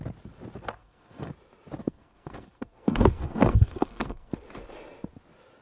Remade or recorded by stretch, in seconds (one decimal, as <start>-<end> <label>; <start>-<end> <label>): 0.0-0.8 recorded; 0.8-1.3 remade; 1.3-1.8 recorded; 1.8-4.3 remade; 4.3-5.6 recorded